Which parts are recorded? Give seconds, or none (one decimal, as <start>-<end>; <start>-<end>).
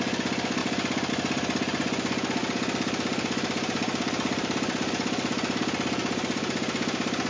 0.0-2.4; 5.6-6.0